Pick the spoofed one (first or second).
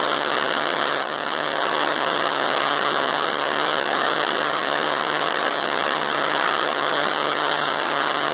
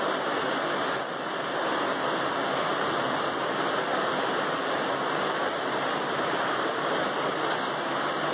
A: first